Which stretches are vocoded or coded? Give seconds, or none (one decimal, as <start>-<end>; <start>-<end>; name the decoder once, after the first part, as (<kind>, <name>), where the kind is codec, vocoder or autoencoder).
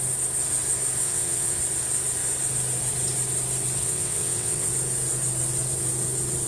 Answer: 1.0-1.6 (vocoder, WaveNeXt); 3.8-4.7